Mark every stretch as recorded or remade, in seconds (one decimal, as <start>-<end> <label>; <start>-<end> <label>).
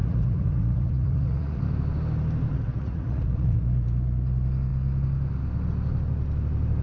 0.0-1.6 remade; 1.6-2.5 recorded; 2.5-3.6 remade; 3.6-6.8 recorded